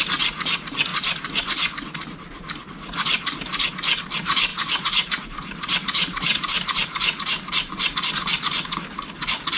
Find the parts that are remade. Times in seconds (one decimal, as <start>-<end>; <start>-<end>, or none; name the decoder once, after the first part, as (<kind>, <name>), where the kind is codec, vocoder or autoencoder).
4.5-8.1 (vocoder, BigVGAN v2)